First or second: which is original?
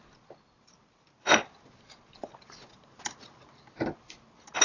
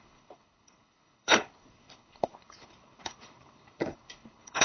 first